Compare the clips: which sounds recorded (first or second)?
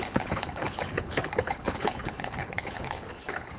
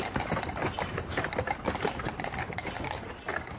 second